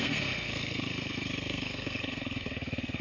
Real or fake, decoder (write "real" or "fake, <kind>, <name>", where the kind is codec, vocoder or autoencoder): fake, codec, SNAC